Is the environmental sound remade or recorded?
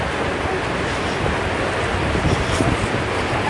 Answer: recorded